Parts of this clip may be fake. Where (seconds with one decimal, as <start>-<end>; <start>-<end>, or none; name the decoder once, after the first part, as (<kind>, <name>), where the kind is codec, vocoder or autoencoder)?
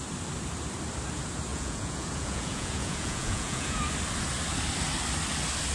1.5-3.8 (vocoder, Vocos)